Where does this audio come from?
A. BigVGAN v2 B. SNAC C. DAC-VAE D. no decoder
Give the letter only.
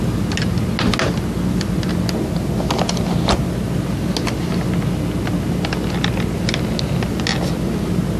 D